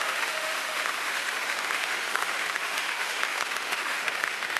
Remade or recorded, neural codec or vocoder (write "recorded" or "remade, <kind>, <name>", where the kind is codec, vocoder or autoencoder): remade, autoencoder, DAC-VAE